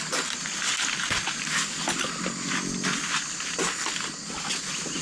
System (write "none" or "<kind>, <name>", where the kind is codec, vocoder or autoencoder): none